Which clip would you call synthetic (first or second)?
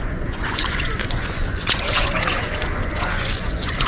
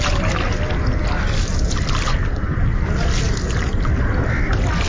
first